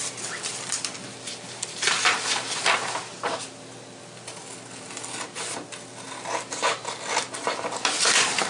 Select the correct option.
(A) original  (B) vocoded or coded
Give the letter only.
A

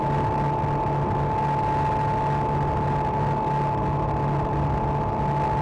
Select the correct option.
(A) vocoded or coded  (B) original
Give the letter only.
B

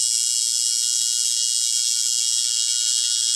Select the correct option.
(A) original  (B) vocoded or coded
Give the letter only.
A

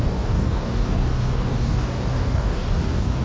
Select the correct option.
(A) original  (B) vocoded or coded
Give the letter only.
B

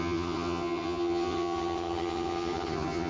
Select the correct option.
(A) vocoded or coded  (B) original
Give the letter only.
A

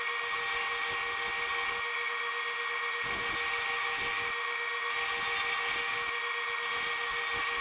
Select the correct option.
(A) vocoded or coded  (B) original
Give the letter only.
B